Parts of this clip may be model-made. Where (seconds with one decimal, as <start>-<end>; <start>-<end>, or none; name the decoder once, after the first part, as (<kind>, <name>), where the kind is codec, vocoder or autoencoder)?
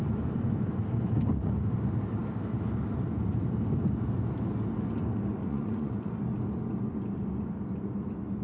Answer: 5.4-6.1 (vocoder, Vocos)